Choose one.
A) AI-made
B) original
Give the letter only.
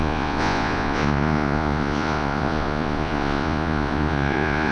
A